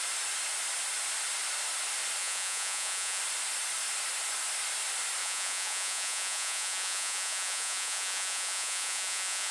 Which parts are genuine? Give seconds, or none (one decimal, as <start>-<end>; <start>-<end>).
0.0-2.2; 3.2-5.2